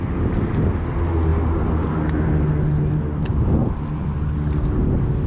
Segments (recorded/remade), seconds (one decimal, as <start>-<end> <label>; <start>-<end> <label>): 0.0-5.3 recorded